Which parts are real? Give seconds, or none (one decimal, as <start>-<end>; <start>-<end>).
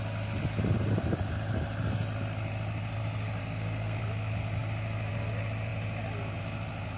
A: 0.0-3.4; 4.0-7.0